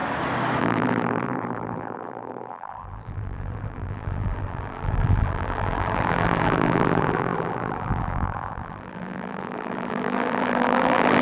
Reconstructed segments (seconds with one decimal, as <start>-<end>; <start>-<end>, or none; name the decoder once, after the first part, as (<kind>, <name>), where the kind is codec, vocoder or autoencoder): 0.6-11.2 (vocoder, BigVGAN v2)